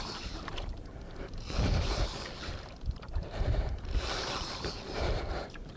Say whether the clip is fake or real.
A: fake